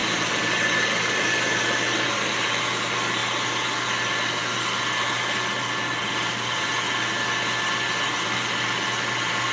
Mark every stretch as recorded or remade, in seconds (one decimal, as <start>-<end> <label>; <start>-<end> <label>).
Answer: 0.0-9.5 recorded